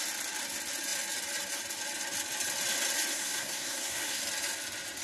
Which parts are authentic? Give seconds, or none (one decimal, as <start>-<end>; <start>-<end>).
0.0-3.1; 4.2-5.0